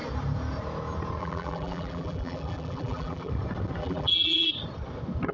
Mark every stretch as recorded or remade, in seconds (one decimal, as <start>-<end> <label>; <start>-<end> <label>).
0.0-1.2 recorded; 1.2-3.3 remade; 3.3-3.8 recorded; 3.8-4.5 remade; 4.5-5.3 recorded